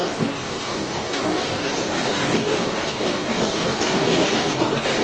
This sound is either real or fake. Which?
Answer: fake